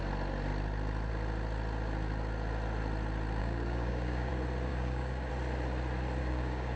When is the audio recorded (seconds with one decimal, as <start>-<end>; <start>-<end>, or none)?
0.0-3.4; 4.3-4.7; 5.3-6.2

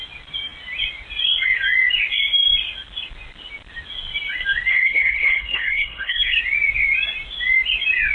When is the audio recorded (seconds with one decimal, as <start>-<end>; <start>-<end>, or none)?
0.0-4.7; 6.4-8.1

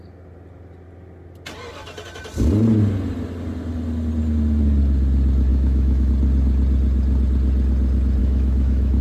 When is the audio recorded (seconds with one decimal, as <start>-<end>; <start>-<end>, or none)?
0.0-5.5; 6.1-8.2

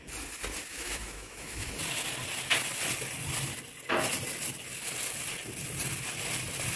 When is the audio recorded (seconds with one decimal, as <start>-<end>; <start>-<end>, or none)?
0.0-0.7; 1.7-6.8

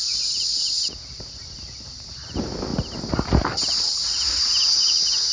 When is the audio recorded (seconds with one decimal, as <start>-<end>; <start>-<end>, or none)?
0.0-5.3